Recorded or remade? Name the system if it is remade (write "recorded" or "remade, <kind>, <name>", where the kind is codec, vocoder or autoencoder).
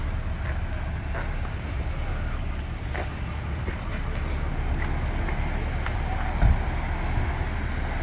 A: recorded